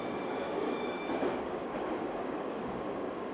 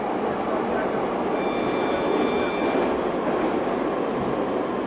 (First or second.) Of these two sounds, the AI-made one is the first